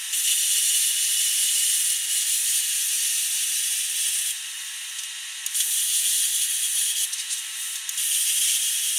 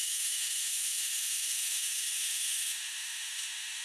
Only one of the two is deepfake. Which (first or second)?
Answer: second